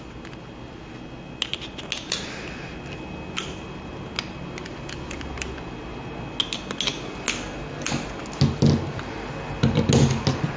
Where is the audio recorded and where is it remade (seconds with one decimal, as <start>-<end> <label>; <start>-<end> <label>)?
0.0-10.6 recorded